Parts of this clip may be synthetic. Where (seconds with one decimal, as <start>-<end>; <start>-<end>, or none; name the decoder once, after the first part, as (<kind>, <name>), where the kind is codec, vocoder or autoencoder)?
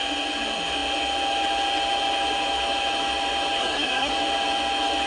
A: 3.6-4.1 (codec, SNAC)